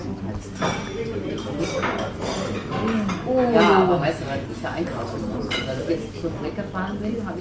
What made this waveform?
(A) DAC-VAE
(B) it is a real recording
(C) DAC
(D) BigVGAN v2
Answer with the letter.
B